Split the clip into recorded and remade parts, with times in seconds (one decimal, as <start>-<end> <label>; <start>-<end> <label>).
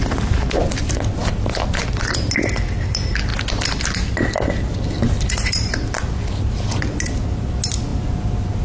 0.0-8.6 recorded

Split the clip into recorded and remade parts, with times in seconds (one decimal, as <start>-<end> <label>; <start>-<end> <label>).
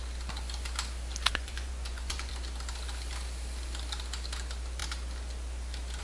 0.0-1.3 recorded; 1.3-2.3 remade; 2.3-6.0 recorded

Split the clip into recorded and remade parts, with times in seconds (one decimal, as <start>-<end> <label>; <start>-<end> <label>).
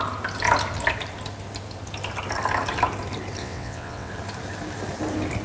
0.0-3.4 recorded; 3.4-4.1 remade; 4.1-5.4 recorded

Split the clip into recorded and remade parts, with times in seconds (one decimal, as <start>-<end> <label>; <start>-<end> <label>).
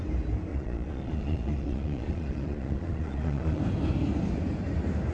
0.0-0.5 recorded; 0.5-3.6 remade; 3.6-5.1 recorded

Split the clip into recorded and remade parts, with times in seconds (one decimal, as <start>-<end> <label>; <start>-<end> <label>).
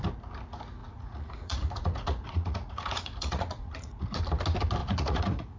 0.0-0.8 recorded; 0.8-4.2 remade; 4.2-4.8 recorded; 4.8-5.6 remade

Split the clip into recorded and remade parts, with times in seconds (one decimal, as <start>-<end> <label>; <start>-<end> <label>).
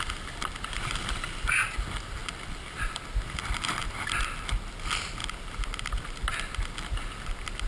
0.0-7.7 recorded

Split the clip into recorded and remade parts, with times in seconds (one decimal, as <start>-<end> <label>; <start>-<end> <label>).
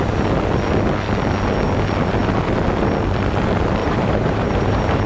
0.0-3.8 recorded; 3.8-5.1 remade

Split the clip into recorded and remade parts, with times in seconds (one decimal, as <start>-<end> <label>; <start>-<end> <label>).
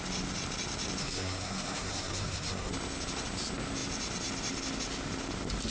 0.0-1.0 recorded; 1.0-2.7 remade; 2.7-5.7 recorded